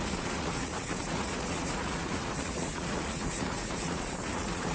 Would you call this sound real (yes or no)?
no